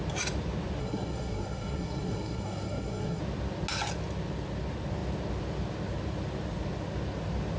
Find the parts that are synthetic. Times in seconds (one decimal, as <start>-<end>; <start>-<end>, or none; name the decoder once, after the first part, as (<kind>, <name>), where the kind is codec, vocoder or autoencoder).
0.8-3.2 (codec, SNAC)